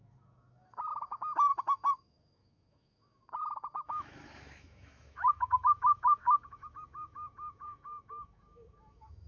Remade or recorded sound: remade